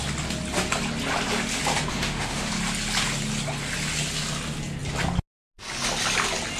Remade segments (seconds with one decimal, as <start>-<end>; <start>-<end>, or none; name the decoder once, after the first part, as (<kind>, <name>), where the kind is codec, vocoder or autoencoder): 1.9-2.5 (autoencoder, DAC-VAE)